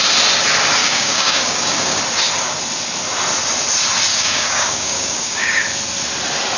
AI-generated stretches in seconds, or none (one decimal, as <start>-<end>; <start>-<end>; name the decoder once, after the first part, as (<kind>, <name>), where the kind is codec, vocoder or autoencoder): 0.8-2.0 (codec, DAC); 4.1-5.6